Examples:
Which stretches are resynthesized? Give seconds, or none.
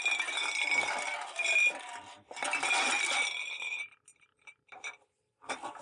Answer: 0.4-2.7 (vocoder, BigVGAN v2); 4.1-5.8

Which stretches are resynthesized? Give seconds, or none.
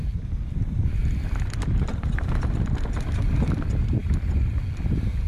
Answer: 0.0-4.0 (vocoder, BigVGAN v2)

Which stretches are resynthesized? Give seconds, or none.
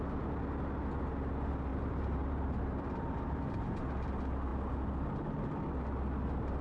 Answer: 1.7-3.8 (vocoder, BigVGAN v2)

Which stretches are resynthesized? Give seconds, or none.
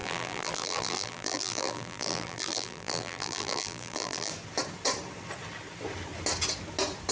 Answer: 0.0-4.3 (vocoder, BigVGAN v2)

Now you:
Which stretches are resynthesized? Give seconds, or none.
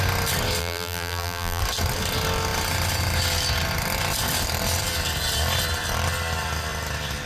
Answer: 0.6-1.6 (vocoder, BigVGAN v2)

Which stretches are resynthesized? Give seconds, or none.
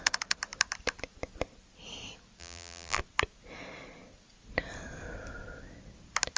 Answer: 2.4-3.0 (vocoder, BigVGAN v2)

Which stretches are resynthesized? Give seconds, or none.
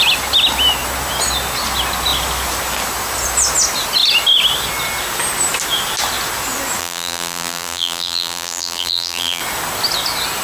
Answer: 6.8-9.4 (vocoder, BigVGAN v2)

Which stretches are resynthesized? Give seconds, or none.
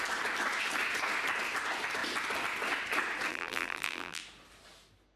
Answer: 3.3-4.2 (vocoder, BigVGAN v2)